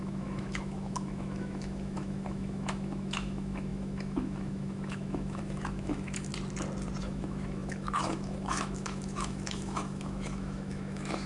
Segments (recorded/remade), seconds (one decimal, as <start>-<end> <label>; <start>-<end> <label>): 0.0-6.3 remade; 6.3-7.0 recorded; 7.0-11.3 remade